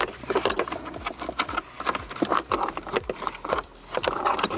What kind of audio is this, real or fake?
real